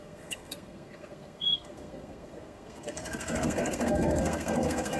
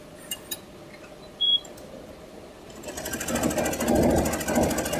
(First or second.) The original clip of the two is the second